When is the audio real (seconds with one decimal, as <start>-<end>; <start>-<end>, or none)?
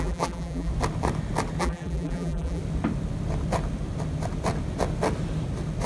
0.7-1.6; 2.6-5.9